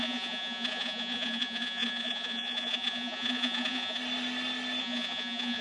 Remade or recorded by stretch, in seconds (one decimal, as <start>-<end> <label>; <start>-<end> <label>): 0.0-4.0 remade; 4.0-4.8 recorded; 4.8-5.6 remade